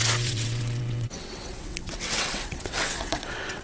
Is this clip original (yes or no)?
no